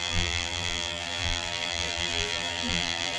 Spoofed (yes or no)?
yes